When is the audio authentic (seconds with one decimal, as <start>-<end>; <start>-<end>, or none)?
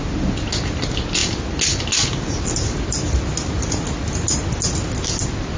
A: 0.0-5.6